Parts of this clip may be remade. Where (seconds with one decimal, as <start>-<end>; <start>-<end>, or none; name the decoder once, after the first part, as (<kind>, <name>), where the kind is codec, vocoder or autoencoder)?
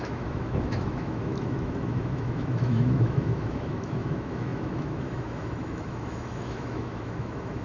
0.0-7.6 (autoencoder, DAC-VAE)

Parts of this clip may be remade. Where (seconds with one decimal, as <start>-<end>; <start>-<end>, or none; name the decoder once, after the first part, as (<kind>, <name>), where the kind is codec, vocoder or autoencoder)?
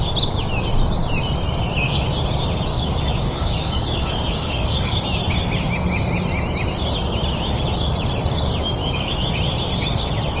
2.7-4.9 (codec, DAC); 8.8-9.3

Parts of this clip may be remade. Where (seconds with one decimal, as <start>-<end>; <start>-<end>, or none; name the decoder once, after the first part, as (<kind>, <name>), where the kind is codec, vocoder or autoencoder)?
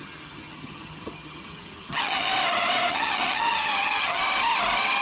0.0-2.3 (vocoder, HiFi-GAN); 2.9-4.2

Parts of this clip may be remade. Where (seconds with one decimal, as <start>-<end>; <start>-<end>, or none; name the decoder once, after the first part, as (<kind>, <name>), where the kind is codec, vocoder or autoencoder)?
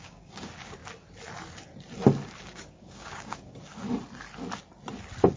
0.0-0.8 (codec, DAC); 2.4-3.7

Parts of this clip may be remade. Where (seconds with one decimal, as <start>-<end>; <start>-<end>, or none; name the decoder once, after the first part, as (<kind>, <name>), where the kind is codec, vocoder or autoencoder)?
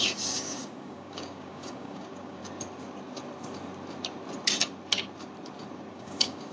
0.0-2.4 (codec, DAC); 5.9-6.5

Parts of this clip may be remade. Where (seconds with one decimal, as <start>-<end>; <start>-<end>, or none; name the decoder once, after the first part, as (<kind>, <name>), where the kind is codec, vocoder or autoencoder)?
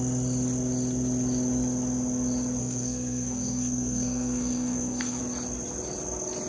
2.6-5.2 (codec, SNAC)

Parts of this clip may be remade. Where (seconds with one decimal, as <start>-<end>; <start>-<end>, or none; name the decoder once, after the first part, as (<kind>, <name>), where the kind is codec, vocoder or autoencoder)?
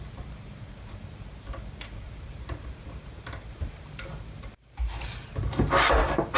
0.0-6.4 (vocoder, BigVGAN v2)